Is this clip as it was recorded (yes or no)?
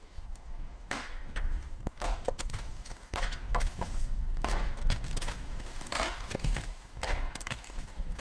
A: no